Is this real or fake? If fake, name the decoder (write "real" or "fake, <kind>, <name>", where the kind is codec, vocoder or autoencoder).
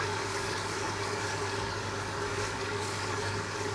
fake, codec, DAC